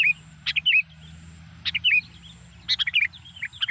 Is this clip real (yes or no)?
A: yes